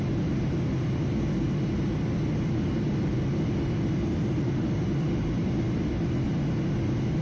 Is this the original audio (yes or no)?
yes